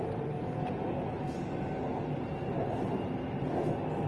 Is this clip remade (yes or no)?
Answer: no